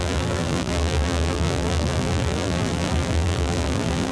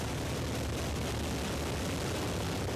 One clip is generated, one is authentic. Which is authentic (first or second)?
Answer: second